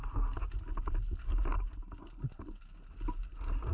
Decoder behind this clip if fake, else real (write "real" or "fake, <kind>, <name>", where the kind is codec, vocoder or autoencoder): real